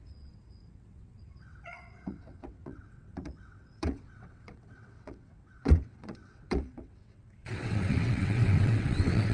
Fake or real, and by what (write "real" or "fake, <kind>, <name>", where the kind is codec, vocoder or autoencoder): fake, vocoder, WaveNeXt